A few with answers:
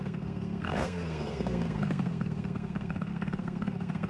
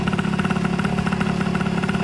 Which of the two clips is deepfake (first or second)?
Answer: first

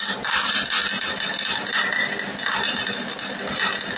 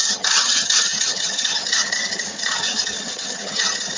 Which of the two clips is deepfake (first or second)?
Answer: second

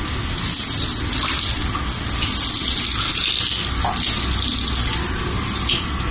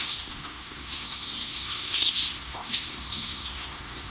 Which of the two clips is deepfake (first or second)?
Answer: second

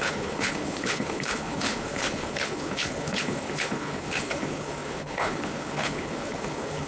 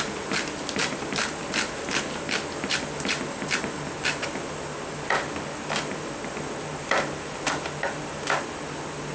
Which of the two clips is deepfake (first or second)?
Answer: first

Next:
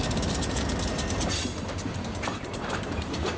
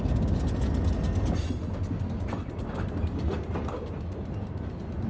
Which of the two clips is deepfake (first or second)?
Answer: first